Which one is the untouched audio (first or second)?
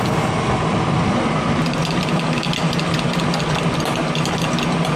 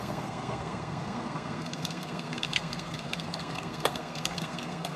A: first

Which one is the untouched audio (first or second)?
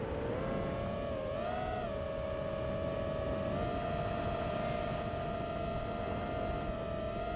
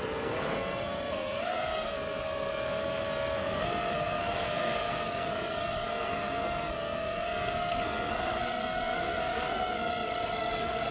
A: first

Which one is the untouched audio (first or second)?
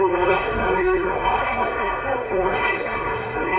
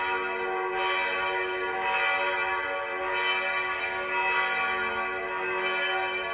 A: second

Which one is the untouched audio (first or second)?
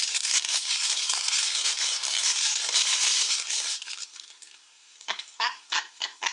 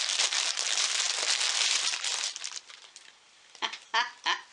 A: second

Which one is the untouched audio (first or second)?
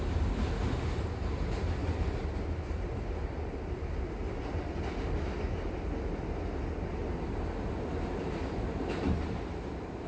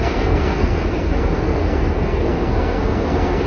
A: first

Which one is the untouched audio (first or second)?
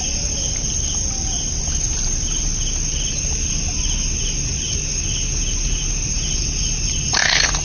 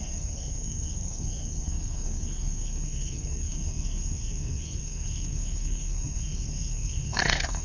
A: first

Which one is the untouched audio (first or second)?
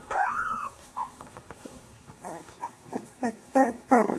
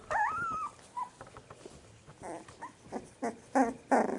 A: second